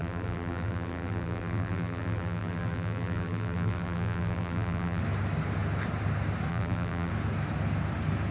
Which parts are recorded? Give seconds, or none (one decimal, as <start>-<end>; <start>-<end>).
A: 5.0-6.5; 7.1-8.3